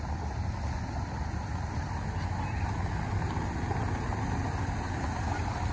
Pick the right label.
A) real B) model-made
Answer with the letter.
A